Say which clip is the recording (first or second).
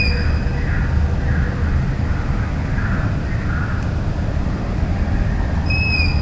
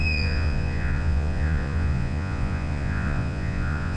first